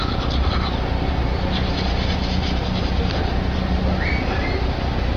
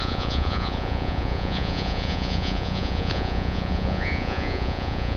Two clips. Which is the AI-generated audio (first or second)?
second